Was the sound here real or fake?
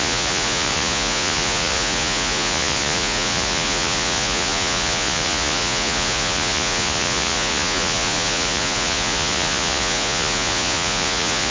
fake